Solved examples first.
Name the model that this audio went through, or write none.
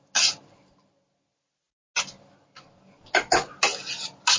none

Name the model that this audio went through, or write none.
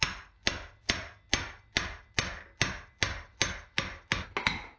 none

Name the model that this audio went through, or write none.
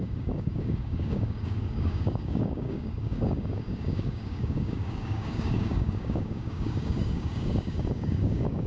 codec, DAC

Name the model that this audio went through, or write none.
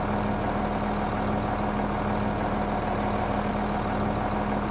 none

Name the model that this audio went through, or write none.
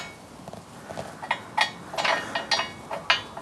none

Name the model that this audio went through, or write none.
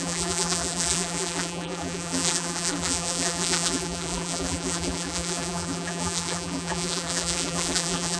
vocoder, BigVGAN v2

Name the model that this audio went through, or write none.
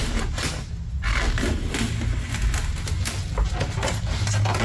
none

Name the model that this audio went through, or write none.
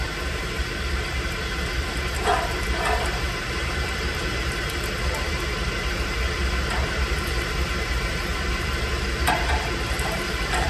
vocoder, BigVGAN v2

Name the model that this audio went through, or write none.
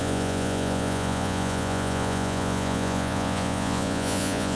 vocoder, Vocos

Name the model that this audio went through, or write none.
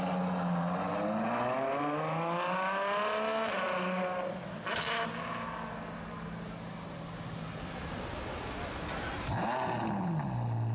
none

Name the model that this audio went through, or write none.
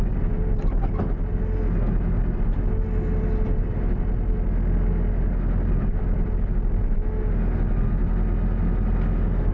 none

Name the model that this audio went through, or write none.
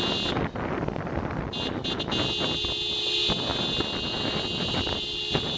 none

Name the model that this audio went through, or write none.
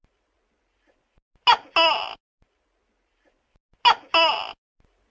none